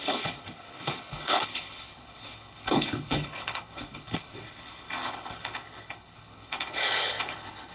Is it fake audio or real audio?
fake